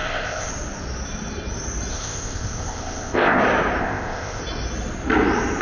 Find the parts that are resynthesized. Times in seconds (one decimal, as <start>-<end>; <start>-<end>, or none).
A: 0.0-0.5; 1.9-3.4; 3.8-4.4